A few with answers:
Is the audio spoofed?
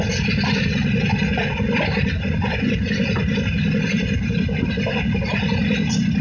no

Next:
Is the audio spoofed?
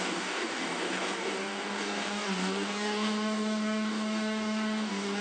yes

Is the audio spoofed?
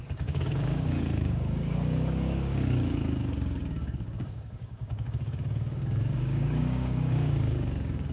yes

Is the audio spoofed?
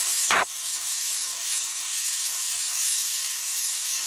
yes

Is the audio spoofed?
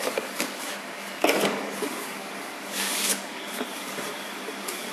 yes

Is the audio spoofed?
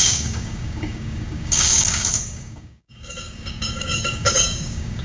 yes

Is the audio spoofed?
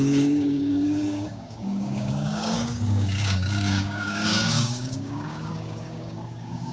yes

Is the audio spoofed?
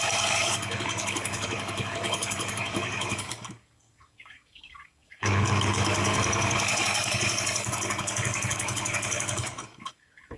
yes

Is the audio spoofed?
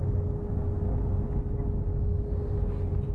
no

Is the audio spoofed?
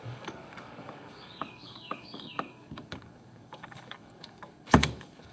yes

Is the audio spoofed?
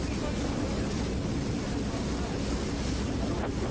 no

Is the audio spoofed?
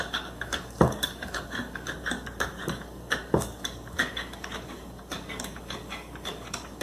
yes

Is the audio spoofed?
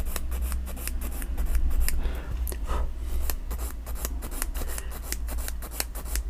no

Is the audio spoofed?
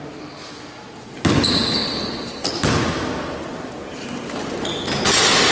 no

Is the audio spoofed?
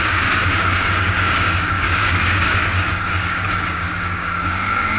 yes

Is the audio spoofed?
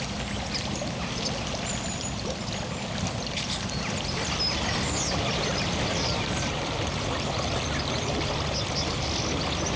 no